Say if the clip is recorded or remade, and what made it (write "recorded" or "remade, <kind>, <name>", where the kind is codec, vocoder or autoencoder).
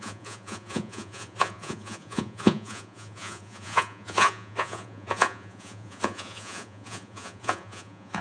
remade, vocoder, Vocos